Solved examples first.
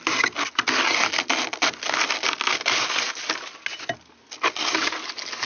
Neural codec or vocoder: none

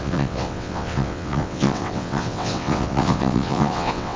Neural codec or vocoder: vocoder, WaveNeXt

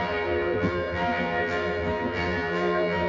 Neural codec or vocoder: vocoder, BigVGAN v2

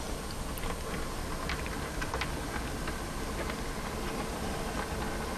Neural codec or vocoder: none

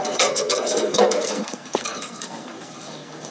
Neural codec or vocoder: codec, SNAC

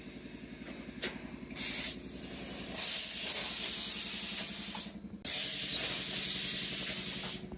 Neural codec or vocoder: none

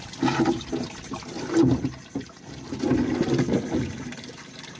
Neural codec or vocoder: none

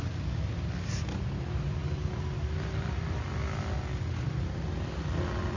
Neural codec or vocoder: none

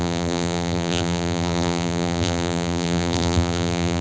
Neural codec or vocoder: vocoder, BigVGAN v2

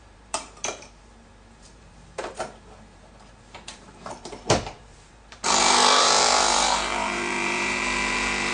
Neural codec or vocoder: vocoder, BigVGAN v2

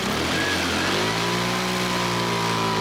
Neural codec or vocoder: none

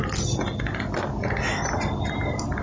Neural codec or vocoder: none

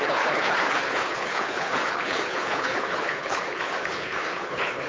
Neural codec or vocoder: codec, HILCodec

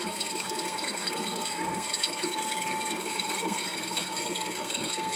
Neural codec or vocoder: codec, SNAC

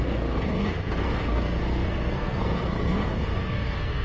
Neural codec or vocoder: codec, SNAC